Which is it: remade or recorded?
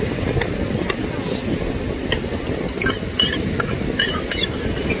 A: recorded